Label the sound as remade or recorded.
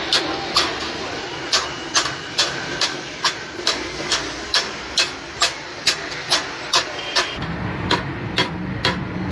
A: recorded